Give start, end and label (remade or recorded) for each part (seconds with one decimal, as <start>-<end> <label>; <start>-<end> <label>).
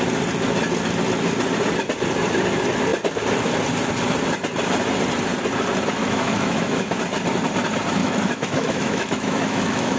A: 0.0-6.0 recorded; 6.0-7.0 remade; 7.0-8.0 recorded; 8.0-10.0 remade